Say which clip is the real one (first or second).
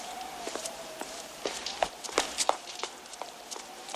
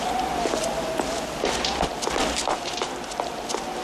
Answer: second